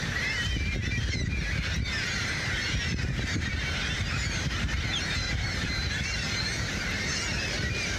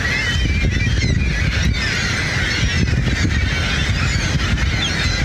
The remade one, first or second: first